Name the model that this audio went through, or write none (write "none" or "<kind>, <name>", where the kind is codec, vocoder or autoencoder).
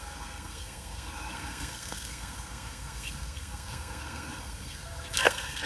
codec, SNAC